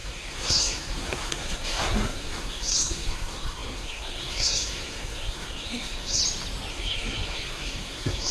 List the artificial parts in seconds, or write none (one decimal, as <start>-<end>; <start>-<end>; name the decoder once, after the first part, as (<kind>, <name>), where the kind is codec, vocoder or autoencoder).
0.0-6.2 (codec, SNAC); 6.7-8.3